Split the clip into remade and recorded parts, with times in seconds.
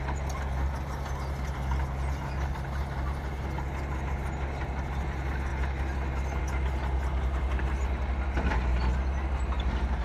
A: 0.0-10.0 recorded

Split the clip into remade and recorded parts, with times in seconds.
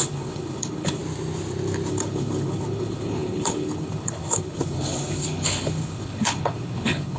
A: 0.0-1.0 remade; 1.0-1.9 recorded; 1.9-7.2 remade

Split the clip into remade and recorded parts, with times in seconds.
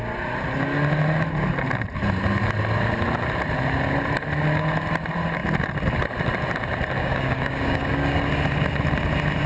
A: 0.0-7.0 recorded; 7.0-8.2 remade; 8.2-9.5 recorded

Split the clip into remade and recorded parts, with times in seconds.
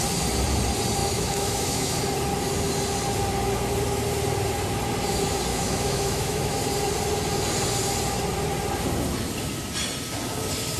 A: 0.0-1.0 recorded; 1.0-2.0 remade; 2.0-5.5 recorded; 5.5-6.6 remade; 6.6-10.8 recorded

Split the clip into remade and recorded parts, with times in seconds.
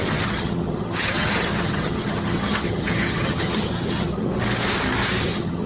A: 0.0-4.3 remade; 4.3-5.2 recorded; 5.2-5.7 remade